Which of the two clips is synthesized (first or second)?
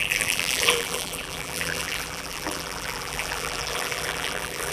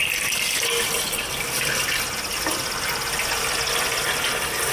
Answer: first